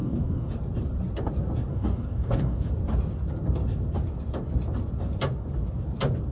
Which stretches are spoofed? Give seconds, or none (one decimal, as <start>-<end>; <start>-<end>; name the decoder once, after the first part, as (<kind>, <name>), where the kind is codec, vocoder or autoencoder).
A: 0.0-0.5 (codec, DAC); 1.7-2.7